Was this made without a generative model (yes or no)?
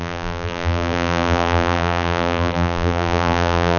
no